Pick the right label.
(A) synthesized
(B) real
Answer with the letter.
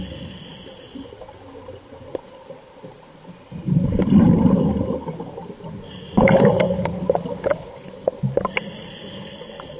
B